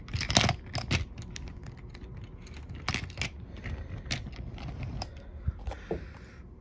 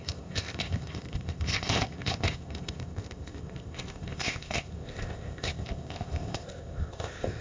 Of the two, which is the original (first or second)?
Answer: first